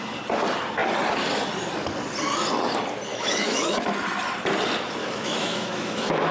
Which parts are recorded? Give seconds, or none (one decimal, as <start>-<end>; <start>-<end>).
0.0-3.1; 3.8-5.0